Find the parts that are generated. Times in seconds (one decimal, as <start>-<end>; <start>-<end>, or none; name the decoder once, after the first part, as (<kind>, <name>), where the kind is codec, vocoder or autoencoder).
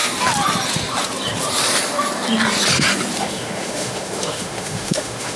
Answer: 3.2-5.4 (autoencoder, DAC-VAE)